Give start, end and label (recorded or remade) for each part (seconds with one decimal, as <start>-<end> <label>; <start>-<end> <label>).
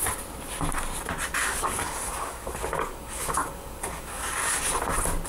0.0-1.4 recorded; 1.4-4.6 remade; 4.6-5.3 recorded